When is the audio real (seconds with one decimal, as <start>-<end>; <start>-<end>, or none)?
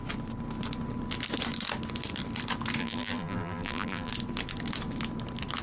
0.0-2.8; 4.1-5.6